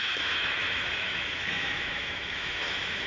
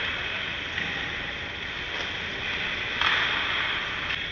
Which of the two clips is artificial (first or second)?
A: first